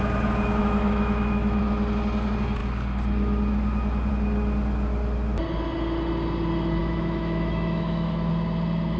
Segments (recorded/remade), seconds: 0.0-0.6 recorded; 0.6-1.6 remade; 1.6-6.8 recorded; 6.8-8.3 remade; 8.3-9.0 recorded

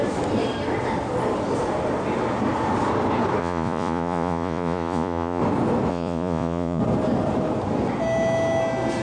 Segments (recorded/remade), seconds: 0.0-3.4 recorded; 3.4-5.4 remade; 5.4-5.9 recorded; 5.9-6.8 remade; 6.8-9.0 recorded

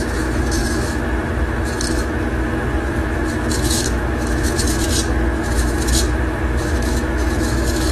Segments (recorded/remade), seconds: 0.0-7.9 remade

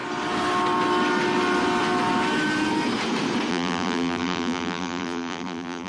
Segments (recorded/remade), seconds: 0.0-3.5 recorded; 3.5-5.9 remade